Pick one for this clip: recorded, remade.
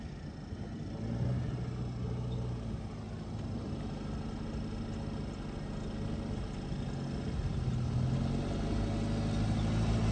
recorded